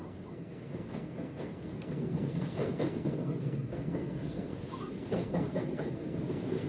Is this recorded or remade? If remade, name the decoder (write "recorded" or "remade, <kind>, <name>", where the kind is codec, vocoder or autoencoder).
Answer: remade, codec, SNAC